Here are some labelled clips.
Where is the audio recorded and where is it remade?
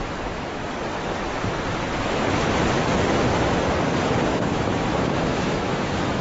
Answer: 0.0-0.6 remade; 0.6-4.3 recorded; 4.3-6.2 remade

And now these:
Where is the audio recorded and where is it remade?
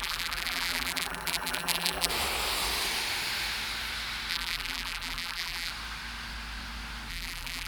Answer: 0.0-2.1 remade; 2.1-4.3 recorded; 4.3-5.7 remade; 5.7-7.1 recorded; 7.1-7.7 remade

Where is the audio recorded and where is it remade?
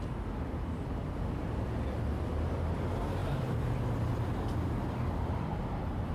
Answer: 0.0-6.1 recorded